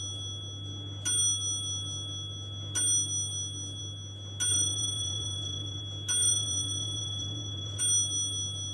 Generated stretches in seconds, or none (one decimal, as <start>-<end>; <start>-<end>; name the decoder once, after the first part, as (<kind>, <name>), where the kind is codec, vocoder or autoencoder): 4.5-5.8 (vocoder, Vocos); 6.2-7.8